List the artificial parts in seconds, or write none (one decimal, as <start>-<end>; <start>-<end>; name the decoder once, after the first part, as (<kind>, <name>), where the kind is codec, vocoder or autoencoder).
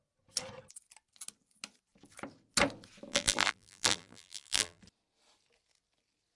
3.1-4.8 (vocoder, BigVGAN v2)